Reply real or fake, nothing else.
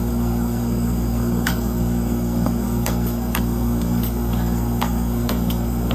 fake